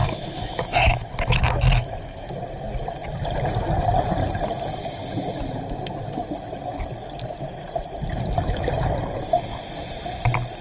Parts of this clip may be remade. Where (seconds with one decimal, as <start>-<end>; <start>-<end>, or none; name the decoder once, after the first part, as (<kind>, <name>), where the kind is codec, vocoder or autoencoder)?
0.0-2.3 (autoencoder, DAC-VAE)